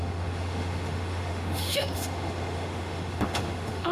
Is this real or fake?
fake